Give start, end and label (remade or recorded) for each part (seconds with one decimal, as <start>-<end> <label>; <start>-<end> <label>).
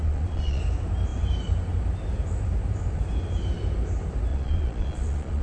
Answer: 0.0-0.6 remade; 0.6-4.3 recorded; 4.3-5.4 remade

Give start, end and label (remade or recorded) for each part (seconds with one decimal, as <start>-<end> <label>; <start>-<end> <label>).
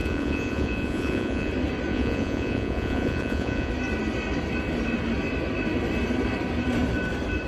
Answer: 0.0-1.5 remade; 1.5-1.9 recorded; 1.9-3.7 remade; 3.7-7.5 recorded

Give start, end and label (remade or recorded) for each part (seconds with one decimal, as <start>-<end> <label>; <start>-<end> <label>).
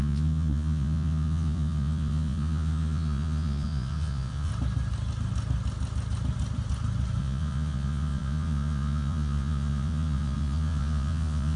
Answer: 0.0-4.5 remade; 4.5-7.2 recorded; 7.2-11.6 remade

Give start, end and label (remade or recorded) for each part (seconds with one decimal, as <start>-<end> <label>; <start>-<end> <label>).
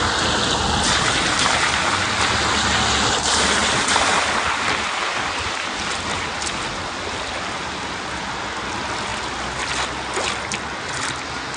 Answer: 0.0-11.6 recorded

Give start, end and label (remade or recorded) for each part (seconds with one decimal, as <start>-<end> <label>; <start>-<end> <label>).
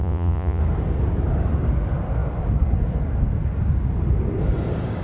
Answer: 0.0-0.6 remade; 0.6-5.0 recorded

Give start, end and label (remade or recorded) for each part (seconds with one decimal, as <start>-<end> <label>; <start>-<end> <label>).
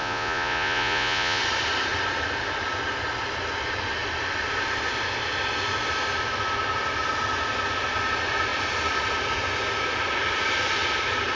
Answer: 0.0-1.4 remade; 1.4-11.4 recorded